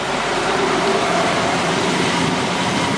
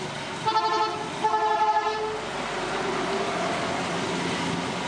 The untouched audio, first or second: second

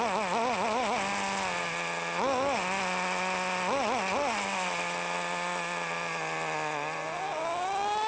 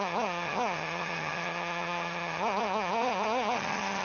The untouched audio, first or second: first